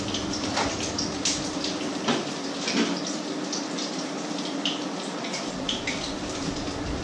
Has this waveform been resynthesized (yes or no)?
yes